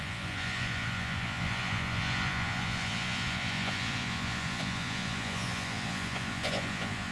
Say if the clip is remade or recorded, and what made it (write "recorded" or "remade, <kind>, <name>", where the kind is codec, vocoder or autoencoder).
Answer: remade, vocoder, Vocos